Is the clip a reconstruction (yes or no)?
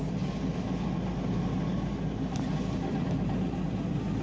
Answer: no